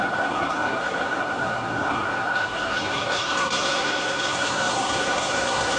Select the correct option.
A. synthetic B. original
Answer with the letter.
A